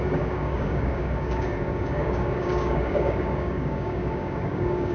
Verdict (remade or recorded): remade